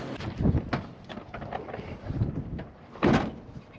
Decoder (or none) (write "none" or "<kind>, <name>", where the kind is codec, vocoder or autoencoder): none